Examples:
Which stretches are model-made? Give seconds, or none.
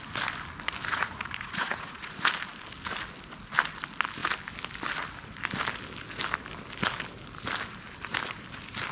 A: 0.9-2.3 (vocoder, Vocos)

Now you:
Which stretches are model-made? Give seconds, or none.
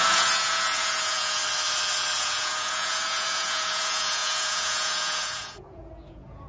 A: 0.0-1.4 (vocoder, Vocos); 2.2-6.5